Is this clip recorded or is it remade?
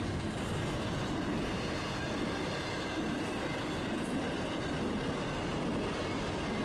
recorded